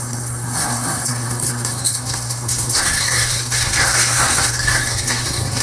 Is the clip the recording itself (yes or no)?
no